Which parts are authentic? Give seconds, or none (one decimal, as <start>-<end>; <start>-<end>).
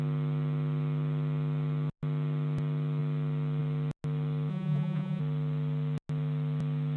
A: 0.0-4.5; 5.2-7.0